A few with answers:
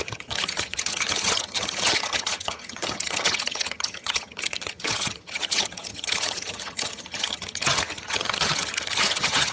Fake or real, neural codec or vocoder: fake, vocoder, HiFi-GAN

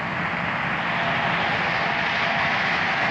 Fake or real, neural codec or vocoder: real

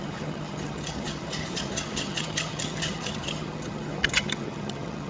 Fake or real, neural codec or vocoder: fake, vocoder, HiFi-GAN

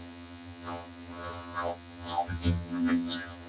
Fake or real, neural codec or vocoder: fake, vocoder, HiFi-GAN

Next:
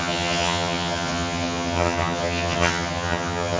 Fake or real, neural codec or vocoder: fake, vocoder, HiFi-GAN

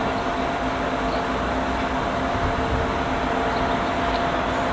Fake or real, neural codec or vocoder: real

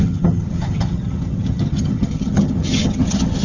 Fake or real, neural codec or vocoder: fake, vocoder, HiFi-GAN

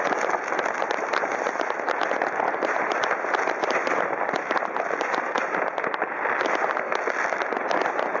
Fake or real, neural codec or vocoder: real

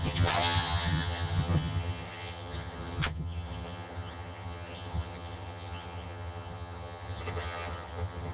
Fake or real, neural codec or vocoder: fake, vocoder, HiFi-GAN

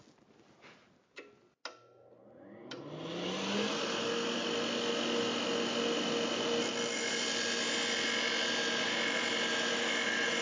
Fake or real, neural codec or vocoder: real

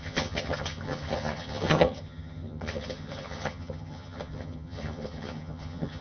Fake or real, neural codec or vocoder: fake, vocoder, HiFi-GAN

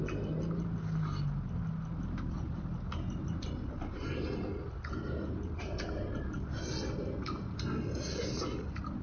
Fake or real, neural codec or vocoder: real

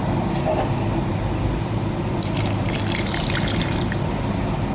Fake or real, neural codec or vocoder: real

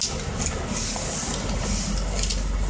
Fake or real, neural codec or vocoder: real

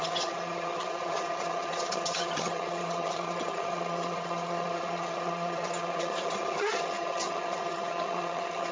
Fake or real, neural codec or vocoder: fake, vocoder, HiFi-GAN